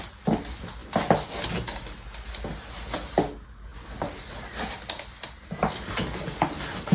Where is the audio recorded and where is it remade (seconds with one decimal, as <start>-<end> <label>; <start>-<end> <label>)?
0.0-6.9 recorded